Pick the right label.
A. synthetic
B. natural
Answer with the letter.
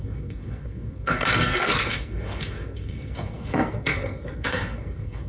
A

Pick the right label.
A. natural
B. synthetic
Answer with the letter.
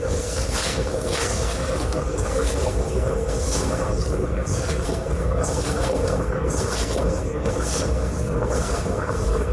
B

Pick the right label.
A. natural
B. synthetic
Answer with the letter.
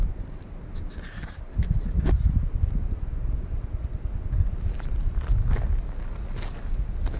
A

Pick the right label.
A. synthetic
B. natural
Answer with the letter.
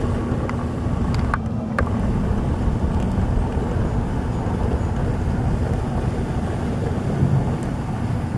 B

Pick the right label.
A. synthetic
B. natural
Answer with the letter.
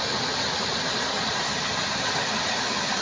B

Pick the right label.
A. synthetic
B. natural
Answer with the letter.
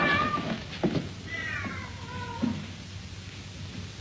B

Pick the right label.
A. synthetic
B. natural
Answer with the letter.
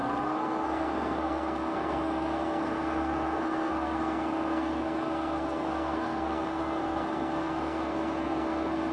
A